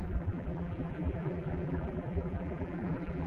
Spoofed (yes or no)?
yes